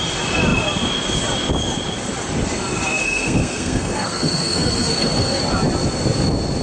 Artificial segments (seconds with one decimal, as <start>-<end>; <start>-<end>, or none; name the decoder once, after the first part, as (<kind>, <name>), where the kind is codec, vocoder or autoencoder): 3.0-5.4 (codec, SNAC)